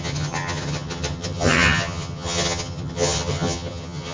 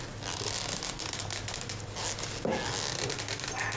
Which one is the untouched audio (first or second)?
second